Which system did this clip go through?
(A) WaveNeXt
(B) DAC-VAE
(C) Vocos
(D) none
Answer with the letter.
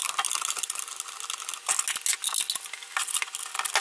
D